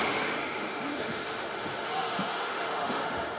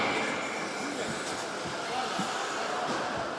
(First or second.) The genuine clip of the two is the second